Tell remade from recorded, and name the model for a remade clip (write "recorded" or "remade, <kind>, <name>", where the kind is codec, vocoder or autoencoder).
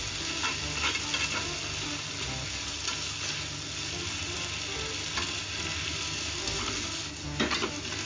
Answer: recorded